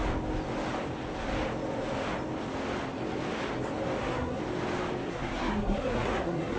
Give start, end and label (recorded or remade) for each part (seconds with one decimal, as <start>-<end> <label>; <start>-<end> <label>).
0.0-4.0 recorded; 4.0-4.4 remade; 4.4-5.1 recorded; 5.1-6.6 remade